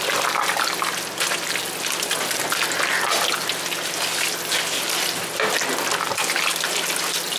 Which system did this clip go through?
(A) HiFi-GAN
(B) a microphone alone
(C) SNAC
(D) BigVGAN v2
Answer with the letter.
B